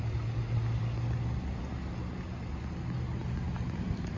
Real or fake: real